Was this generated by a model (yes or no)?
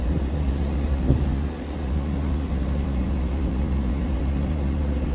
yes